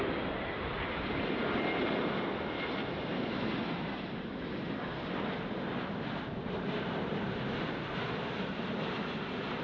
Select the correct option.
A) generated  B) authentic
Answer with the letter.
B